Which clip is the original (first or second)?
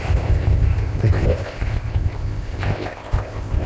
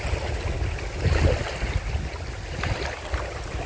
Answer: second